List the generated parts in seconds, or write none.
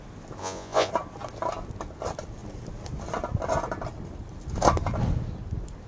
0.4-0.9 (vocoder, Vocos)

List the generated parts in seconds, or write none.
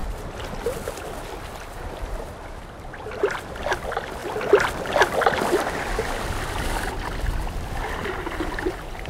1.5-4.2 (vocoder, BigVGAN v2); 6.2-9.1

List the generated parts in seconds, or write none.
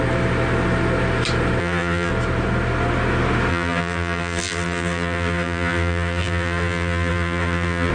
1.6-2.1 (vocoder, BigVGAN v2); 3.5-7.9